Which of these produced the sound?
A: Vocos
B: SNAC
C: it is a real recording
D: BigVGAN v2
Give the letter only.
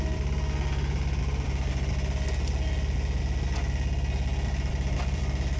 C